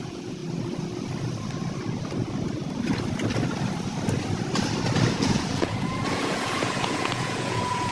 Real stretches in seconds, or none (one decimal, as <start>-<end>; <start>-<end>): 0.4-5.1